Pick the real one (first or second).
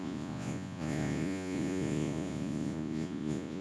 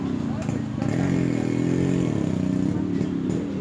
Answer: second